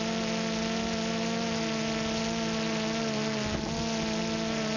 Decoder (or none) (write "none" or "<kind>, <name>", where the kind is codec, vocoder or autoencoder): none